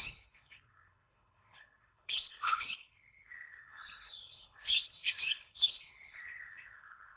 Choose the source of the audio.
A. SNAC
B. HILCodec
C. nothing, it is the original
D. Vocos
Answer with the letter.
B